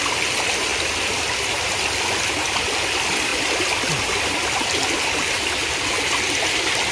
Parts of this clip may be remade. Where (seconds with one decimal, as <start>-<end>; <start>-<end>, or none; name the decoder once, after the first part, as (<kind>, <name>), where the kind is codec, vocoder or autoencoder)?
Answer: none